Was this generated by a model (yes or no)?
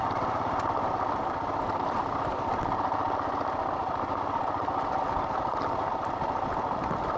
no